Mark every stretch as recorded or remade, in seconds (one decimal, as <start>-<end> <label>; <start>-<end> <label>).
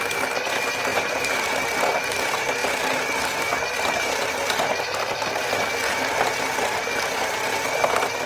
0.0-8.3 recorded